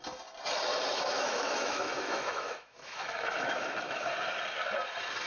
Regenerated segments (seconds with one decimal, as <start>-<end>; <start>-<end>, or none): 0.9-4.1